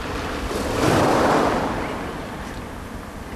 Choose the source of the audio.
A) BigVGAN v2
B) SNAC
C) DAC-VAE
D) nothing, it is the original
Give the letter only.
D